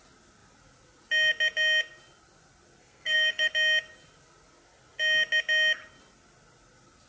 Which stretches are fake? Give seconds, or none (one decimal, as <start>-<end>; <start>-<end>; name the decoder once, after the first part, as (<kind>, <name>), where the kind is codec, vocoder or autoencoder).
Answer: 2.8-3.5 (codec, SNAC)